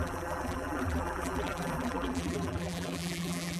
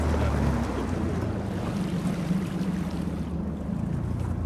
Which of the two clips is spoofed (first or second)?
first